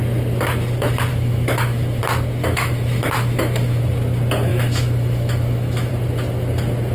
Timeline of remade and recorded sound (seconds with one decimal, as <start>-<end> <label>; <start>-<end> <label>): 0.0-1.1 recorded; 1.1-2.0 remade; 2.0-2.4 recorded; 2.4-3.8 remade; 3.8-4.5 recorded; 4.5-5.9 remade; 5.9-6.9 recorded

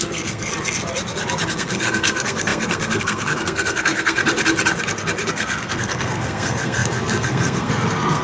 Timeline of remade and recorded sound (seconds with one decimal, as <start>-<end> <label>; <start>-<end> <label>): 0.0-0.5 remade; 0.5-1.5 recorded; 1.5-4.2 remade; 4.2-5.3 recorded; 5.3-8.2 remade